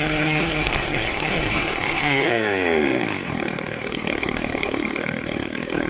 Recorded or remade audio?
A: remade